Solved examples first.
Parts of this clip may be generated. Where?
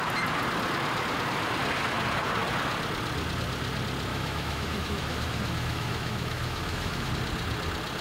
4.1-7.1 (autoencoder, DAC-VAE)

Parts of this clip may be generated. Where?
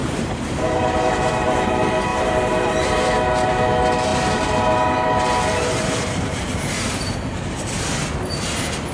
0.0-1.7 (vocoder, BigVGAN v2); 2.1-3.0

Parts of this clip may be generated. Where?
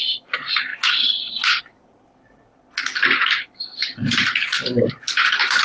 none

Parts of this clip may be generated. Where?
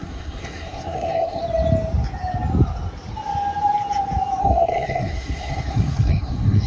0.0-1.4 (codec, SNAC); 4.4-6.7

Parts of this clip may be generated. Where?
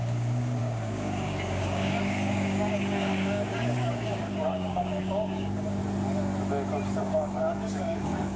0.0-5.8 (codec, DAC); 7.0-8.4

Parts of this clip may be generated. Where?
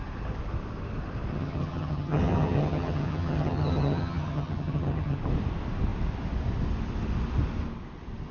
1.3-5.2 (vocoder, HiFi-GAN)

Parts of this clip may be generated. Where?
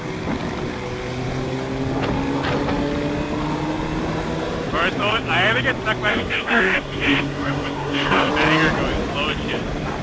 6.1-8.3 (codec, SNAC)